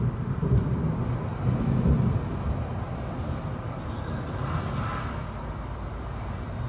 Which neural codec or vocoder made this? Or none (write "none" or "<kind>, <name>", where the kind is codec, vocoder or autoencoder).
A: none